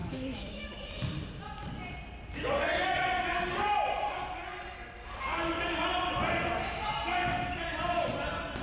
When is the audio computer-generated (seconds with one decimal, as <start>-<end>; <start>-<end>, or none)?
0.0-0.6